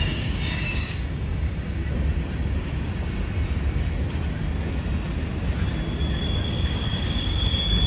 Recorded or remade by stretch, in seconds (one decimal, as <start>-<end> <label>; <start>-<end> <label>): 0.0-1.8 remade; 1.8-6.5 recorded; 6.5-7.9 remade